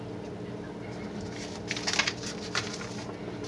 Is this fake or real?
real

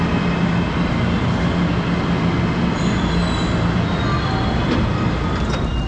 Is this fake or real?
real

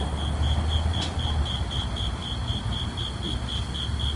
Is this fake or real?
real